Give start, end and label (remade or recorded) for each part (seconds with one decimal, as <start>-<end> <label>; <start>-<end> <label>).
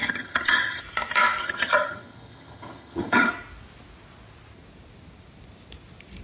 0.0-0.8 remade; 0.8-1.4 recorded; 1.4-3.3 remade; 3.3-6.2 recorded